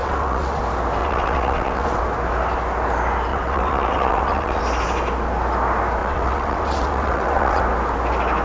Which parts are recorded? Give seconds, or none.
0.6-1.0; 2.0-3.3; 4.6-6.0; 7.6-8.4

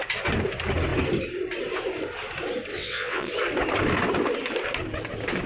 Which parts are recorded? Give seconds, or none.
0.0-2.7; 3.3-5.5

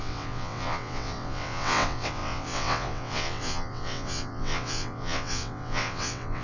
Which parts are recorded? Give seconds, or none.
none

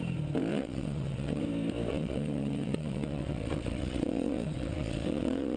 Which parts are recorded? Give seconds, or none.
0.0-0.5; 1.4-1.9

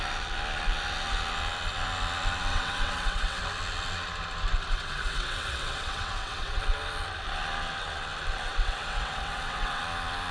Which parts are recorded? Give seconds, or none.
0.0-2.5; 3.4-4.7; 6.6-8.5; 9.8-10.3

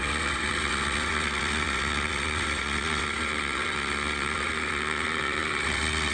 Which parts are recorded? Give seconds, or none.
none

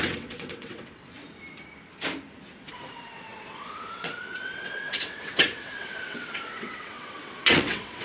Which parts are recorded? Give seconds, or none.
1.2-2.7